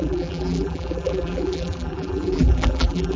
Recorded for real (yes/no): no